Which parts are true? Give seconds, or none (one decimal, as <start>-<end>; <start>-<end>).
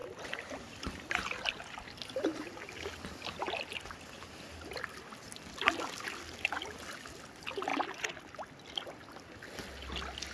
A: 0.0-10.3